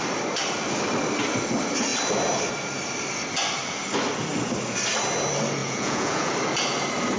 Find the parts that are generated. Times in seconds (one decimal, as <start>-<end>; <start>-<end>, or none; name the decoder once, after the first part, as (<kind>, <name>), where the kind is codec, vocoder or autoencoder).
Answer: 5.6-6.3 (vocoder, Vocos)